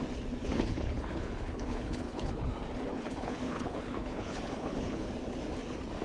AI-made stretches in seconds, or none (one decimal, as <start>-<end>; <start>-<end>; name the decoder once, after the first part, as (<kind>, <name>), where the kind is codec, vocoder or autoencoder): 0.4-2.5 (codec, HILCodec); 2.9-5.1